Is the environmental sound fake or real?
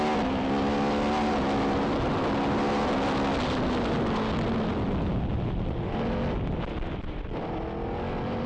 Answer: real